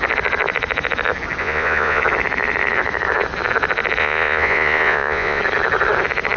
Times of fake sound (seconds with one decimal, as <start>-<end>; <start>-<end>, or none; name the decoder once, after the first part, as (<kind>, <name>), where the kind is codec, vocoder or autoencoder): 1.4-2.0 (vocoder, Vocos); 4.0-5.4